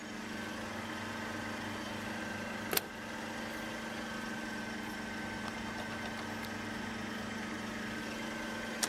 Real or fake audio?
real